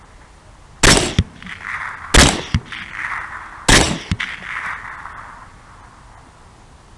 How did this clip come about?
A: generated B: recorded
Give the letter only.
B